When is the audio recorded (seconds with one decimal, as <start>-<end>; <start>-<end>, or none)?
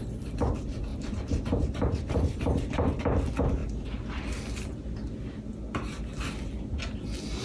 0.0-0.9; 3.0-7.4